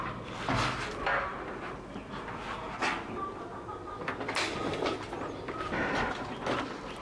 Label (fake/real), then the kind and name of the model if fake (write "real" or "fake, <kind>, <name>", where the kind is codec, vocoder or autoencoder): real